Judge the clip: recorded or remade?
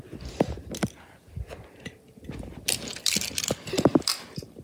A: recorded